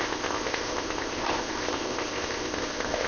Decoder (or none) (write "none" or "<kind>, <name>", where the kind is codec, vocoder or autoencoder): codec, ZipCodec